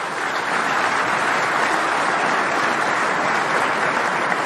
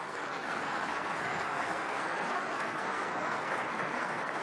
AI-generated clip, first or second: second